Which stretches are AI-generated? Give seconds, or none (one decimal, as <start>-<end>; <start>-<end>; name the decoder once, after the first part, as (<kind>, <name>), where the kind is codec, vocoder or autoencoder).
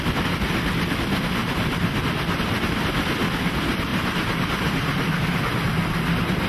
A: 1.4-2.0 (vocoder, BigVGAN v2); 3.9-5.4